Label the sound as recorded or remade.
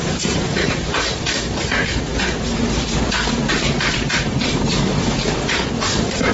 remade